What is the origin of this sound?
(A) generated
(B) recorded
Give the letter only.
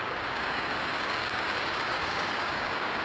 A